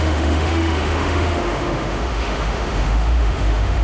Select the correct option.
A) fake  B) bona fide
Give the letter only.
A